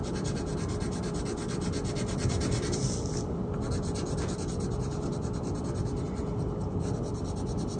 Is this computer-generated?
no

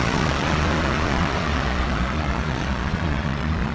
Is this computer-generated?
yes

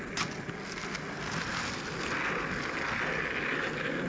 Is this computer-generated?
no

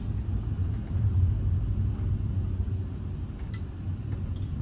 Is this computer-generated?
no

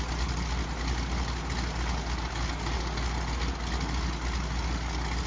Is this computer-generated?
no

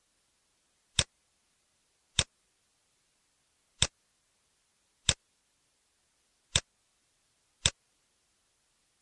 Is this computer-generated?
no